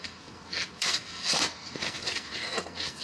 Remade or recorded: remade